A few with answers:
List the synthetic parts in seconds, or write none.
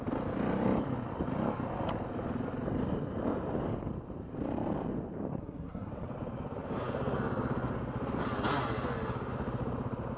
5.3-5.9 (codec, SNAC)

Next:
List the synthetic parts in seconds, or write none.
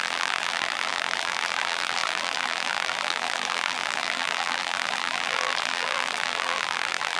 0.0-7.2 (vocoder, BigVGAN v2)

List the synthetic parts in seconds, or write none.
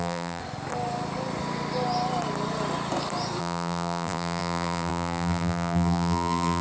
0.0-0.4 (vocoder, BigVGAN v2); 3.4-6.6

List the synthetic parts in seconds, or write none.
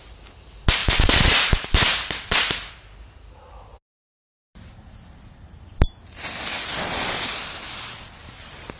0.8-2.7 (vocoder, BigVGAN v2)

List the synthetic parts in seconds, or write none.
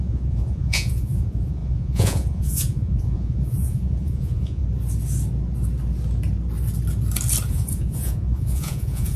0.0-4.6 (vocoder, Vocos); 7.5-9.2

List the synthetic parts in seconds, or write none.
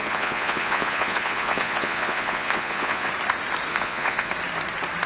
0.0-3.1 (vocoder, Vocos); 3.7-4.3